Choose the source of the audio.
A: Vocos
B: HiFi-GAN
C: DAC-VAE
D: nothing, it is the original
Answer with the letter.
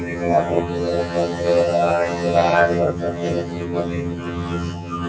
B